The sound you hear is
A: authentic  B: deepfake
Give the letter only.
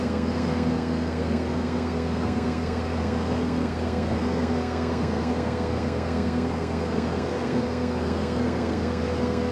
B